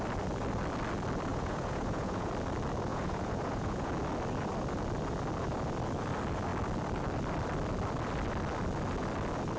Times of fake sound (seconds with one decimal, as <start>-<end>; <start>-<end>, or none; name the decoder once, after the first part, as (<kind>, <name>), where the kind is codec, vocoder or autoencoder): 1.3-2.3 (vocoder, Vocos); 2.9-3.9